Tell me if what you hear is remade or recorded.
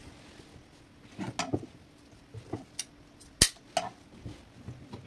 recorded